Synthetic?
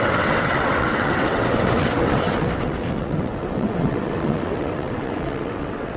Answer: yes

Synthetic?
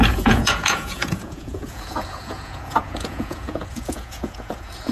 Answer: yes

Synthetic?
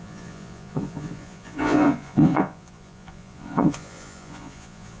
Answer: yes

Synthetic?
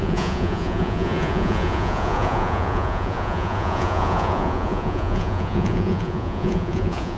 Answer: yes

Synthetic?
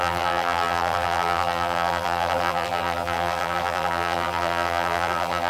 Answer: yes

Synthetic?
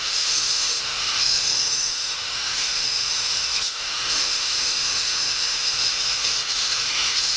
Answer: yes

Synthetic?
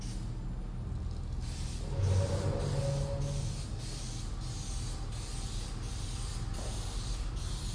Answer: no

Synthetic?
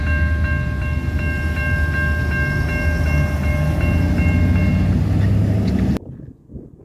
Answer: no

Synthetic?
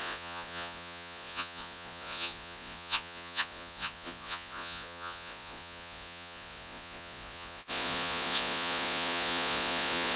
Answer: yes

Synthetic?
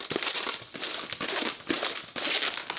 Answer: no